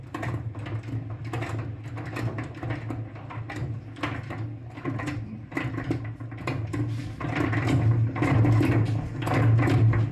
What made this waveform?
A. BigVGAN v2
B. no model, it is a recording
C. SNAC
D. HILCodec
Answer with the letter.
B